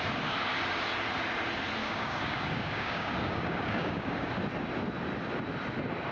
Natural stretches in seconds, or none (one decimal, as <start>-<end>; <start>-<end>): 0.0-1.8; 4.3-6.1